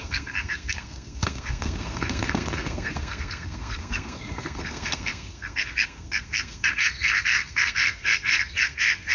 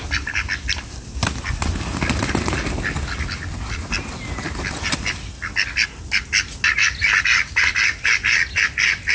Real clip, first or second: second